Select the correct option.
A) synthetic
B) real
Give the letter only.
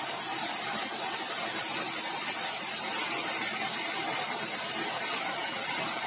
B